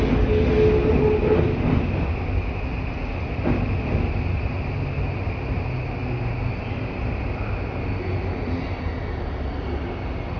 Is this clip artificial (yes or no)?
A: no